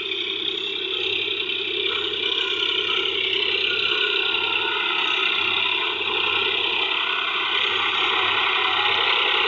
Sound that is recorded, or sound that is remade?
recorded